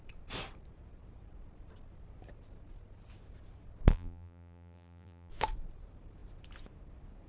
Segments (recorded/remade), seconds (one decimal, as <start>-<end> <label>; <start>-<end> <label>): 0.0-3.9 recorded; 3.9-5.3 remade; 5.3-7.3 recorded